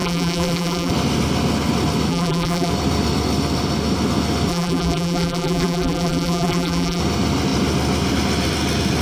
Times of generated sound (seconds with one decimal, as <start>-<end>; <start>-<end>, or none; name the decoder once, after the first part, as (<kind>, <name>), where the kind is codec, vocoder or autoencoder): 0.0-0.9 (vocoder, BigVGAN v2); 2.1-2.7; 4.5-7.0